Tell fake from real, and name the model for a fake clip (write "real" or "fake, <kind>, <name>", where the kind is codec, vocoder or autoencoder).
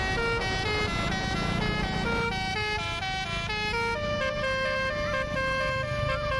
real